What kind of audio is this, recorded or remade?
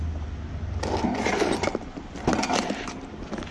recorded